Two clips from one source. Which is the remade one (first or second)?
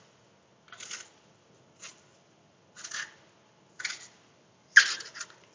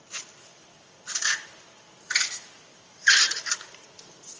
second